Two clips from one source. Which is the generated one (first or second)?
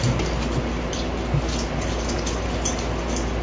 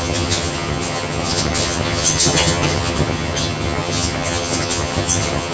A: second